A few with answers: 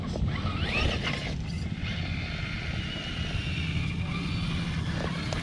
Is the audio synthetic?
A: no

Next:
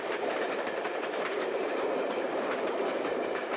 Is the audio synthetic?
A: yes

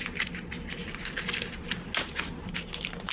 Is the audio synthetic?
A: no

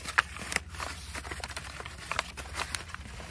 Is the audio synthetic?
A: no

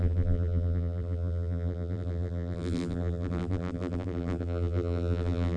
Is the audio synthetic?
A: yes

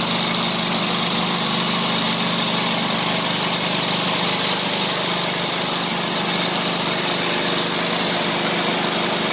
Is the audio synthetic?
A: no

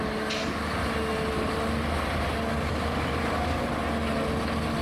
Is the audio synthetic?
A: no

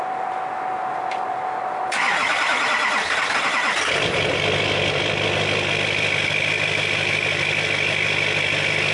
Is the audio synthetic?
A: no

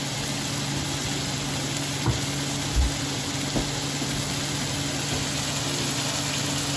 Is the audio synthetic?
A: no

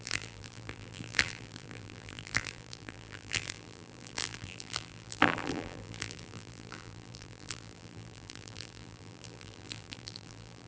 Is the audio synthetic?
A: yes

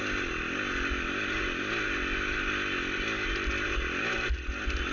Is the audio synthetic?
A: no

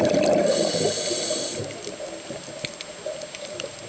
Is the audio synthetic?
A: no